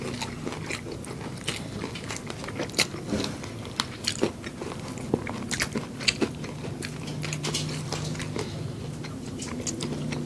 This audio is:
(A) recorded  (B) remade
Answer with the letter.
A